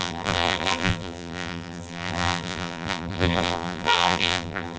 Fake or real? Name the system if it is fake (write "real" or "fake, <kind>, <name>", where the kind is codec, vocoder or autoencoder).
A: fake, vocoder, BigVGAN v2